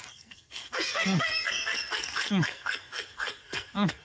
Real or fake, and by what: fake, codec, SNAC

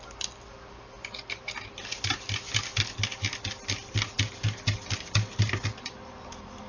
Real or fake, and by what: real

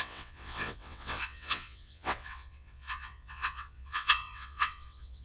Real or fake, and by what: fake, vocoder, WaveNeXt